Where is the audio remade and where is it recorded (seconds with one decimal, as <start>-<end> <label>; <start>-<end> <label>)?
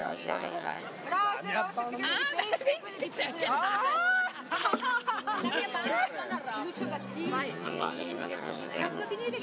0.0-0.8 remade; 0.8-7.5 recorded; 7.5-9.0 remade; 9.0-9.4 recorded